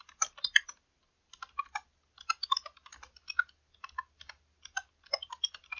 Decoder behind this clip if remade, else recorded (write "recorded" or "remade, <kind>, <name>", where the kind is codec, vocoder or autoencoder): recorded